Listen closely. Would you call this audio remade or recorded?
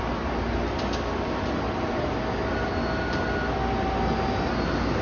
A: recorded